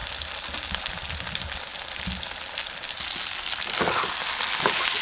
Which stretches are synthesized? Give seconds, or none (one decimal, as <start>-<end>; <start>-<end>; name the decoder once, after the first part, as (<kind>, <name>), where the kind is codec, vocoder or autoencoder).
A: none